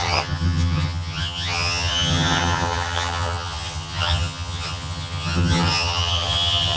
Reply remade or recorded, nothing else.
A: remade